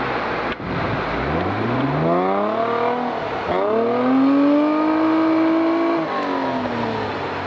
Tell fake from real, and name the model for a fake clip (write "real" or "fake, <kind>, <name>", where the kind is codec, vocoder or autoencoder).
real